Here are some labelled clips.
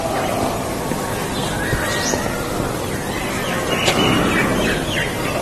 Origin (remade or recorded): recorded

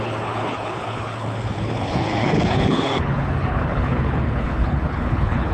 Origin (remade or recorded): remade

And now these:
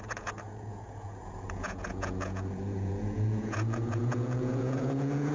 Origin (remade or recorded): remade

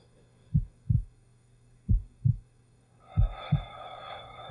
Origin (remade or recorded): remade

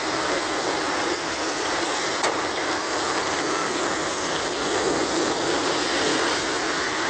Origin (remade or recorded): recorded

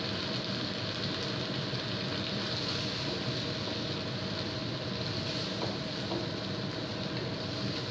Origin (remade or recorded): recorded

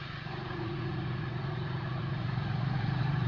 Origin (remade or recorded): remade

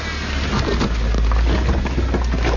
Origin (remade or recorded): recorded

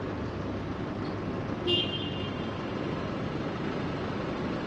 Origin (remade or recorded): recorded